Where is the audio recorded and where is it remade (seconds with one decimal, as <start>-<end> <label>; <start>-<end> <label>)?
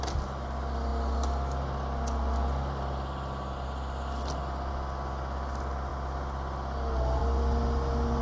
0.0-8.2 recorded